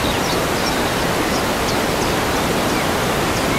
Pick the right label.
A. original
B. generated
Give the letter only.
A